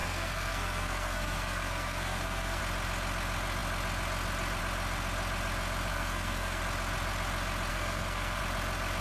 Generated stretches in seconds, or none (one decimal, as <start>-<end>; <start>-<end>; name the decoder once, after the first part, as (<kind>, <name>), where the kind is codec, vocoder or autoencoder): 0.0-2.6 (codec, SNAC); 5.9-6.6; 7.7-8.4